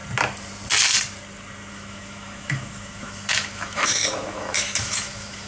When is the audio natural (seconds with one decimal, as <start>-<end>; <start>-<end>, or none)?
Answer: 0.0-1.7